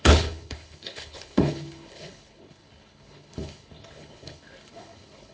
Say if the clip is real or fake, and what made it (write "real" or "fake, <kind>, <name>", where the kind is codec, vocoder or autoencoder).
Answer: fake, codec, HILCodec